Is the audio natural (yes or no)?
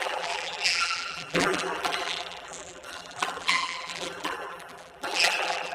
no